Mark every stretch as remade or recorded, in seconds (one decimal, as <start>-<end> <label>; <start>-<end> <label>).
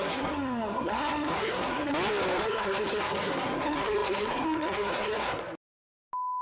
0.0-1.9 remade; 1.9-2.4 recorded; 2.4-5.4 remade; 5.4-6.4 recorded